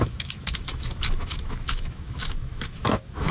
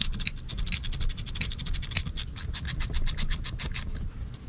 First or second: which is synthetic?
first